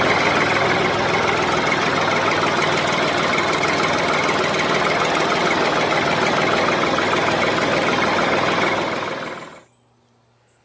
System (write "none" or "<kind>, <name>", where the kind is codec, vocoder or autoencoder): none